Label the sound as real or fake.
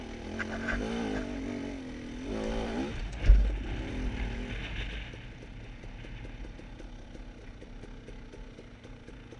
real